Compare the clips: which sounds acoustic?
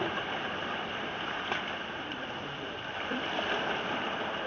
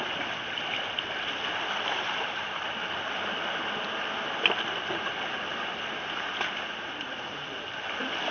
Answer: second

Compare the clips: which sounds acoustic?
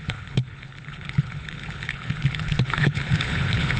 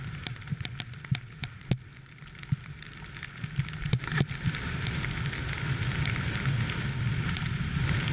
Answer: second